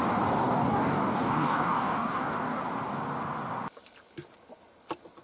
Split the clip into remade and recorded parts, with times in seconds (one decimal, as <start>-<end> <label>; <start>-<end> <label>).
0.0-0.4 recorded; 0.4-2.6 remade; 2.6-5.2 recorded